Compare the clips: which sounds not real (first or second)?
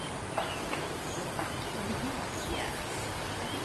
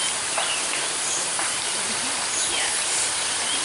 second